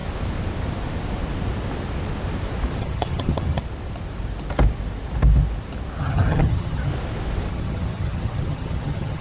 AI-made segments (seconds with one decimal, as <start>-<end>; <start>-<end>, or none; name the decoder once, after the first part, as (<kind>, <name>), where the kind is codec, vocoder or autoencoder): 2.8-3.6 (vocoder, HiFi-GAN); 6.0-6.9; 7.5-9.2